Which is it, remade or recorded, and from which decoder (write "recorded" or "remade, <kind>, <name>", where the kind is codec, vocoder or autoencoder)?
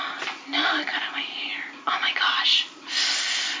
recorded